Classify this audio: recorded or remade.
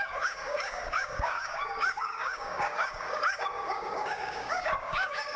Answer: remade